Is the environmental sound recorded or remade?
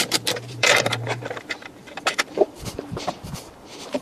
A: remade